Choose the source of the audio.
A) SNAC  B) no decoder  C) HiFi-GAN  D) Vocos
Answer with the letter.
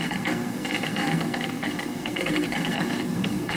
A